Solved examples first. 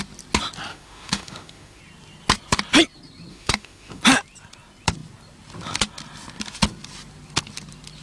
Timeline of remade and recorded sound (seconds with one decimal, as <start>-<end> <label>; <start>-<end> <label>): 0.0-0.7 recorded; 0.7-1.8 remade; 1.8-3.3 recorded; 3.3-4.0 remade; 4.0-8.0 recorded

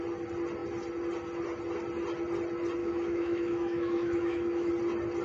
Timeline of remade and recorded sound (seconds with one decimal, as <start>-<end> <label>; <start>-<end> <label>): 0.0-2.8 recorded; 2.8-4.7 remade; 4.7-5.2 recorded

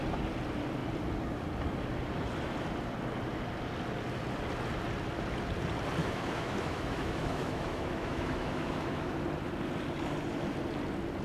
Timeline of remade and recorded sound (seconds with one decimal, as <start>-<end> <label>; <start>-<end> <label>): 0.0-6.0 recorded; 6.0-9.1 remade; 9.1-11.2 recorded

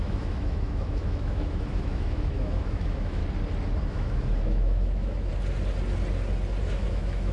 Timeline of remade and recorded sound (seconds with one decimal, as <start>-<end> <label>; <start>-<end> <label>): 0.0-3.2 remade; 3.2-3.9 recorded; 3.9-5.3 remade; 5.3-6.6 recorded; 6.6-7.3 remade

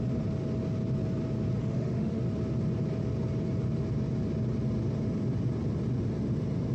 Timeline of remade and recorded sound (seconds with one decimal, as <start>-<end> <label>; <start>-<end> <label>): 0.0-1.6 recorded; 1.6-2.2 remade; 2.2-6.7 recorded

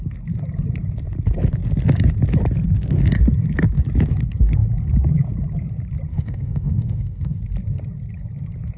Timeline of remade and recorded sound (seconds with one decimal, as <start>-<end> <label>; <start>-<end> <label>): 0.0-6.1 recorded; 6.1-7.4 remade; 7.4-8.8 recorded

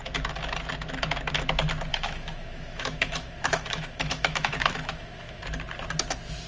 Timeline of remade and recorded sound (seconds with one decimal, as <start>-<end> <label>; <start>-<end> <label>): 0.0-1.9 recorded; 1.9-5.4 remade; 5.4-6.5 recorded